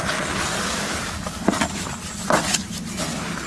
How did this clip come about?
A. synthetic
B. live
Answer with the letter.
B